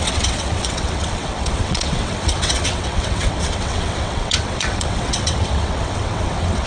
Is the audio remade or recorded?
remade